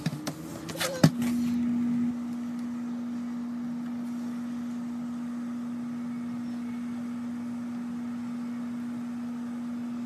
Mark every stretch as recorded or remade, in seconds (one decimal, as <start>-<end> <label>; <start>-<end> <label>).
0.0-0.5 recorded; 0.5-1.1 remade; 1.1-10.1 recorded